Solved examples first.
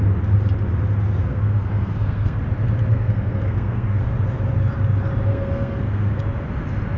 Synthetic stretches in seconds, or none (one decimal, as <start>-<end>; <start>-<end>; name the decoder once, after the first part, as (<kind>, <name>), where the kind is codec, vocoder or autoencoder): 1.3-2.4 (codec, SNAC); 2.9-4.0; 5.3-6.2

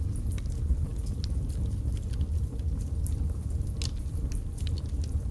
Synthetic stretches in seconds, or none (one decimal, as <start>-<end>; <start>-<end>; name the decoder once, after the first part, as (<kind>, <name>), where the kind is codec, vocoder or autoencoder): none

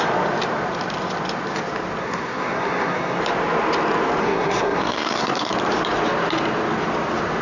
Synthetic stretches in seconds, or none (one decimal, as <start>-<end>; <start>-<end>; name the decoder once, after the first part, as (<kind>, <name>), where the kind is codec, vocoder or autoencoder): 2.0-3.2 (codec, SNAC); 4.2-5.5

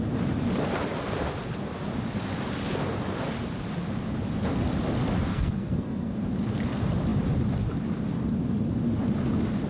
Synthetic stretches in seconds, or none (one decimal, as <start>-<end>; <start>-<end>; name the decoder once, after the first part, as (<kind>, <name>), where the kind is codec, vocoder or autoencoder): 5.3-6.1 (codec, SNAC)

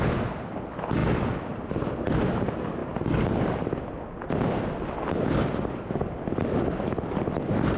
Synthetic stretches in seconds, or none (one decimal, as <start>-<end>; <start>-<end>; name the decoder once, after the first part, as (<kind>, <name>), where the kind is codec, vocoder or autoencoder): none